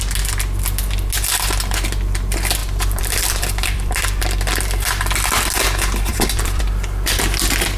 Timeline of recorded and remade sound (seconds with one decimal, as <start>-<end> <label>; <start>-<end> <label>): 0.0-2.6 recorded; 2.6-4.2 remade; 4.2-6.1 recorded; 6.1-6.6 remade; 6.6-7.8 recorded